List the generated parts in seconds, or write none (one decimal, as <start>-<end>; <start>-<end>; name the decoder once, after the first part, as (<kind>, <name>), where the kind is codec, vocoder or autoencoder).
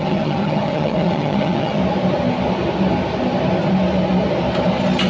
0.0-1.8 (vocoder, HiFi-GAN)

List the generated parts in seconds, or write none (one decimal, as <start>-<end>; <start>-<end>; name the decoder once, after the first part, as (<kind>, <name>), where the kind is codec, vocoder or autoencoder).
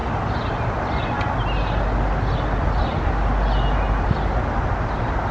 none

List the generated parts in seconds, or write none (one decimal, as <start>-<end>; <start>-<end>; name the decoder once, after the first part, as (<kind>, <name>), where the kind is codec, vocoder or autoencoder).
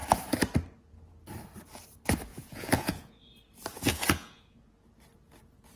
2.3-3.2 (vocoder, Vocos); 3.9-4.7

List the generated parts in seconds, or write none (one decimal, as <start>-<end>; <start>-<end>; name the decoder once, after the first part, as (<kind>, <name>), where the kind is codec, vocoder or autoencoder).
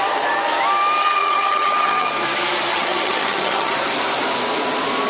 1.0-2.1 (vocoder, HiFi-GAN); 2.7-3.7